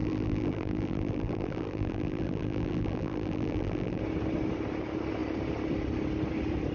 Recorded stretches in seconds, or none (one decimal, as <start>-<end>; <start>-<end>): 4.0-6.7